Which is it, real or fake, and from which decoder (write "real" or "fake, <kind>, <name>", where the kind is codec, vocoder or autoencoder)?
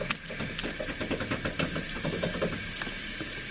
real